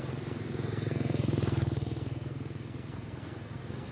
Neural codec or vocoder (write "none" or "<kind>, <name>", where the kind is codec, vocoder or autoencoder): codec, SNAC